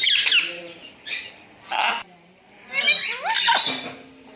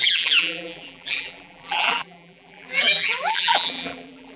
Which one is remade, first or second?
second